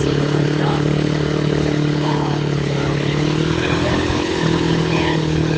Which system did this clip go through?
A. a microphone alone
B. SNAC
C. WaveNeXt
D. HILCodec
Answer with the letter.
D